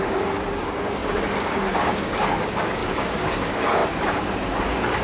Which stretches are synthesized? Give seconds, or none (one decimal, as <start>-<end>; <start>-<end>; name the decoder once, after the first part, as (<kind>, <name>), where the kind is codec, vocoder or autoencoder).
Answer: 0.0-5.0 (codec, DAC)